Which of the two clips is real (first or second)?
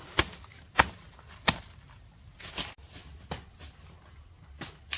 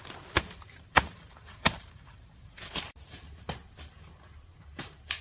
first